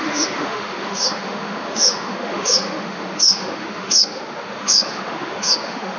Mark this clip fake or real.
fake